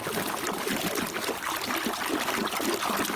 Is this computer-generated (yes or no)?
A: no